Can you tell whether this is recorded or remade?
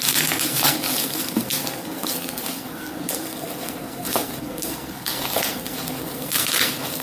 remade